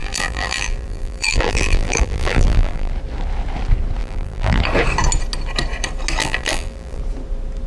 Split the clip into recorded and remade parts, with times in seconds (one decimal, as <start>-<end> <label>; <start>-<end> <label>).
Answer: 0.0-2.9 remade; 2.9-4.0 recorded; 4.0-4.6 remade; 4.6-6.2 recorded; 6.2-7.0 remade; 7.0-7.7 recorded